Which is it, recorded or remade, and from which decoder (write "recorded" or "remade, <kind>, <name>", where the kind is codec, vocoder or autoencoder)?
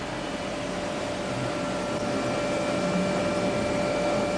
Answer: recorded